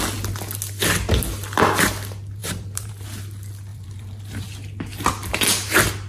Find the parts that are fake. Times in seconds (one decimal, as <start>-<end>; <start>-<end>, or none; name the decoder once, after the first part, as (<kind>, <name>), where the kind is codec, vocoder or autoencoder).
2.4-2.9 (vocoder, BigVGAN v2); 3.7-4.2